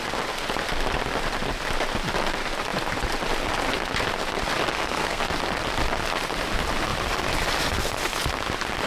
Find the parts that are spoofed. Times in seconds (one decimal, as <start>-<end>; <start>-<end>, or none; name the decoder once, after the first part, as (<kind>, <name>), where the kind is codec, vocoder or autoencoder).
4.7-5.2 (codec, SNAC)